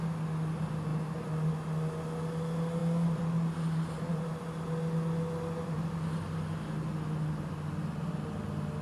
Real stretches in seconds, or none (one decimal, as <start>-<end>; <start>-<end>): 0.0-8.8